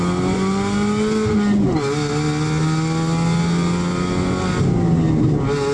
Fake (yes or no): no